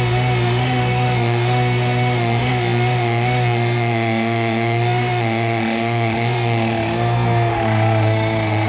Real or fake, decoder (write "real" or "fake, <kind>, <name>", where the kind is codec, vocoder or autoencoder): fake, autoencoder, DAC-VAE